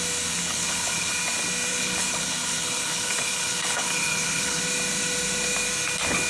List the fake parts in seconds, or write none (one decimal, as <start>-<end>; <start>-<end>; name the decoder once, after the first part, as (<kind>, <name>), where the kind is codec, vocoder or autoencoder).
0.4-1.1 (codec, HILCodec); 1.7-4.6